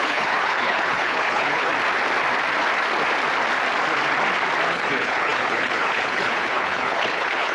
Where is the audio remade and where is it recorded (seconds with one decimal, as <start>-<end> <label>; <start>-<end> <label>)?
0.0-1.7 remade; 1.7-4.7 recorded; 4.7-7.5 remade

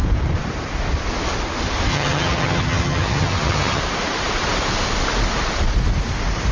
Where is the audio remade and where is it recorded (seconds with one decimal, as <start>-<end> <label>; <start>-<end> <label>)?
0.0-1.9 recorded; 1.9-3.8 remade; 3.8-6.5 recorded

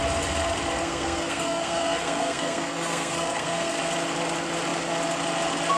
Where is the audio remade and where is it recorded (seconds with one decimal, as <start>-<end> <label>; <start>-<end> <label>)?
0.0-0.8 recorded; 0.8-3.8 remade; 3.8-5.8 recorded

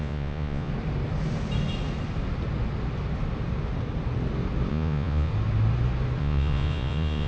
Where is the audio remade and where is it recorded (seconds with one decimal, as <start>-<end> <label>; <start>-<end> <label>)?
0.0-0.7 remade; 0.7-4.7 recorded; 4.7-5.3 remade; 5.3-6.2 recorded; 6.2-7.3 remade